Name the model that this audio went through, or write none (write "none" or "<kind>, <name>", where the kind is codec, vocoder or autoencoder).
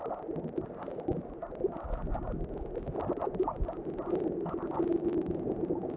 none